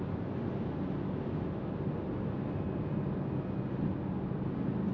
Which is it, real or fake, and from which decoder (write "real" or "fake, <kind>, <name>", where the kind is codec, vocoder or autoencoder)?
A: real